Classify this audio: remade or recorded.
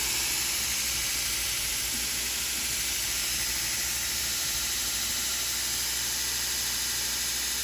recorded